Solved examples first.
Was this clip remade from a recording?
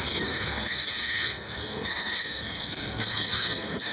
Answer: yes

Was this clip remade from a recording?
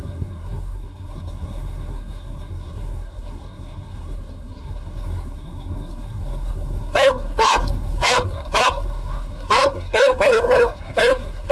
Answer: yes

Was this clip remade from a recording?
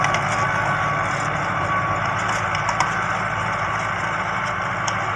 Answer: no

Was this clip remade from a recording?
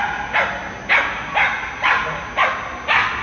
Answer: no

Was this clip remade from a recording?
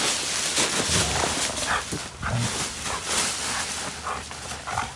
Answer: no